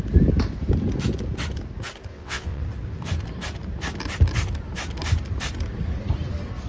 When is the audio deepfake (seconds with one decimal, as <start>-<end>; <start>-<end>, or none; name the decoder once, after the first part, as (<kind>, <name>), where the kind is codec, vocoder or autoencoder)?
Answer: 2.1-2.6 (vocoder, WaveNeXt)